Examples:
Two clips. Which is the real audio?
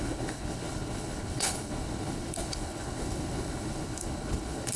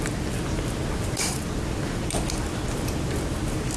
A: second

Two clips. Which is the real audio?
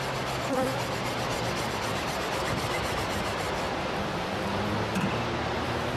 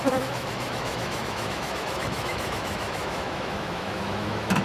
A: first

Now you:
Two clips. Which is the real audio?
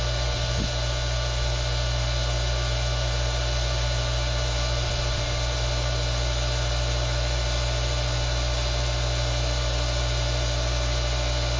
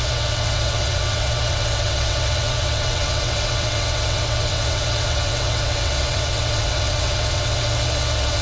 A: first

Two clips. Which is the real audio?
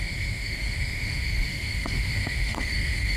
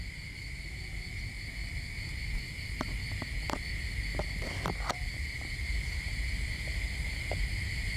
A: second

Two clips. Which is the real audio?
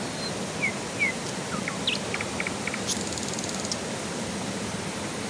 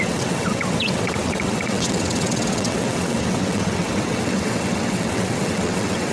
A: first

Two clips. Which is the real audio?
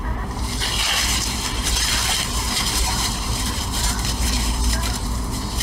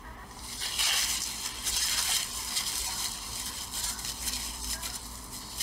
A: second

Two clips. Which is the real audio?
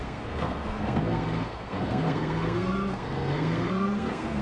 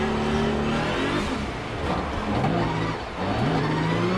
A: second